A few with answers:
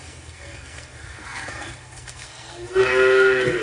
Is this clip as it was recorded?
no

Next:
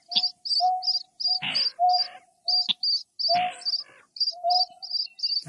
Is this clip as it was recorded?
yes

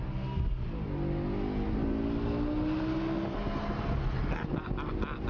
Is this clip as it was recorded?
yes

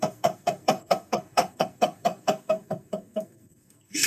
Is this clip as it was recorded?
no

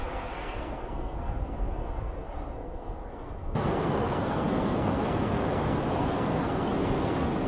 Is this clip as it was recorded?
no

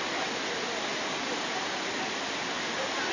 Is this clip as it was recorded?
yes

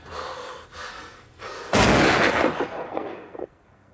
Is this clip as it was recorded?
no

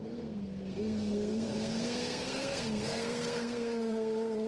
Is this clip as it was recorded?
no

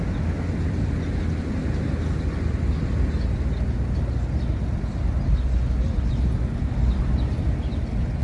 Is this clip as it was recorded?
yes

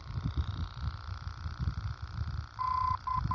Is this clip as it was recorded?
yes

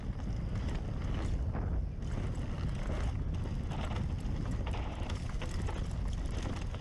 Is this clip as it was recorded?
yes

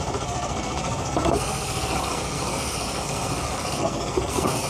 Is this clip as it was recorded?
no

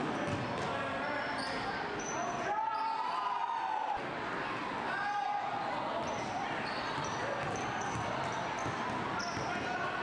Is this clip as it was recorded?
yes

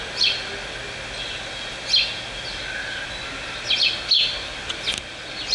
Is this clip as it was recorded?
yes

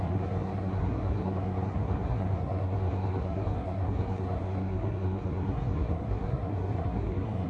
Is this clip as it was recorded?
no